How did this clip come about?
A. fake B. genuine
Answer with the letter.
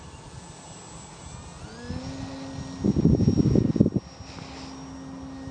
B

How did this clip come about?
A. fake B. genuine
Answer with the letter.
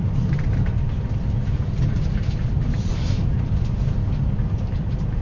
A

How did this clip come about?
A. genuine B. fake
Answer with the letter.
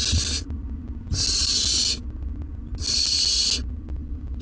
A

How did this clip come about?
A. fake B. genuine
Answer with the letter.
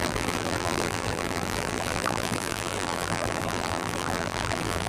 A